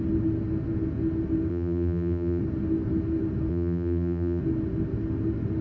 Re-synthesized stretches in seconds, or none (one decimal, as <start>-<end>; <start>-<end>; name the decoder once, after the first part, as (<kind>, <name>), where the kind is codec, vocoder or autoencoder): 1.5-2.4 (vocoder, BigVGAN v2); 3.5-4.4